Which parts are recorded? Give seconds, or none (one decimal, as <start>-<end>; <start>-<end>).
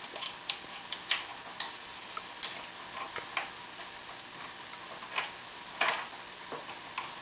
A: 0.0-7.2